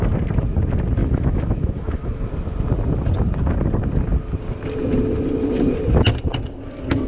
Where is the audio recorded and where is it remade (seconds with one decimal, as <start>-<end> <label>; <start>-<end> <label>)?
0.0-1.0 recorded; 1.0-2.3 remade; 2.3-7.1 recorded